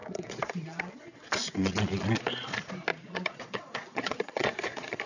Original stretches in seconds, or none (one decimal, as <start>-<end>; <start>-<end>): 2.3-2.9